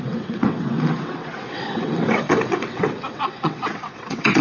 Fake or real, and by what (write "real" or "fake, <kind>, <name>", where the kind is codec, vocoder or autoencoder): fake, vocoder, WaveNeXt